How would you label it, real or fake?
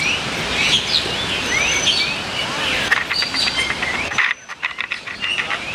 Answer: real